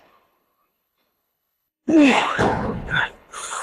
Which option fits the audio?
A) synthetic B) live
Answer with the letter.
A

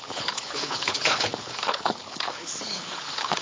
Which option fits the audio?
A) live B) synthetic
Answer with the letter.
B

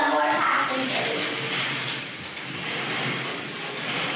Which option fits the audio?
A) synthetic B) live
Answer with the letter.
B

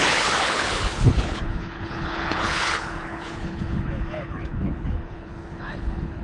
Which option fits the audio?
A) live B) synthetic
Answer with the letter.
B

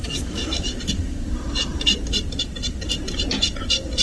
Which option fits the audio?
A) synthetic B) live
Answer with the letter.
B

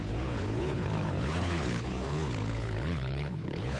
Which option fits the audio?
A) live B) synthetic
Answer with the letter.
B